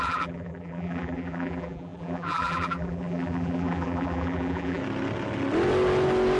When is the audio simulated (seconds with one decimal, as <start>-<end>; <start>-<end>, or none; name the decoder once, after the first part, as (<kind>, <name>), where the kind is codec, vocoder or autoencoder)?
0.0-4.8 (vocoder, BigVGAN v2)